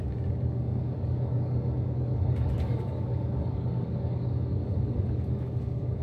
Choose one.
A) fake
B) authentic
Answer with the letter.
A